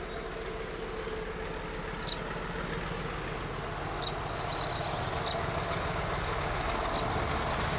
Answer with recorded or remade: recorded